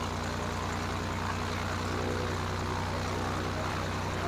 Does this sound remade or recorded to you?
recorded